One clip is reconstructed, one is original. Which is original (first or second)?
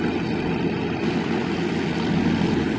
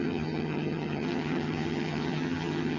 first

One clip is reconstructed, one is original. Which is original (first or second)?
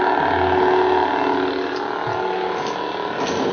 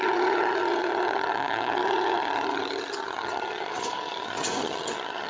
first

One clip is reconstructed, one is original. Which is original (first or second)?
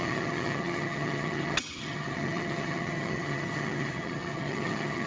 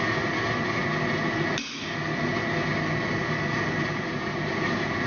second